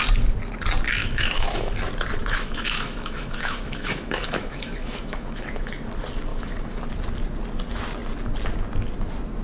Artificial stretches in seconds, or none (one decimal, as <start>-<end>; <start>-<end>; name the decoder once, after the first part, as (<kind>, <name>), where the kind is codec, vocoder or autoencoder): 1.0-1.7 (autoencoder, DAC-VAE); 2.2-5.7; 6.3-6.8